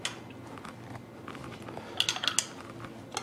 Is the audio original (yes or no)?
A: yes